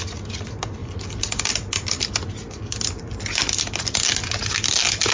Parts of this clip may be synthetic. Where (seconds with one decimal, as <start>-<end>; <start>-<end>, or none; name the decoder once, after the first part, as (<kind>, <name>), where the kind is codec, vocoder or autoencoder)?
0.8-1.5 (vocoder, BigVGAN v2)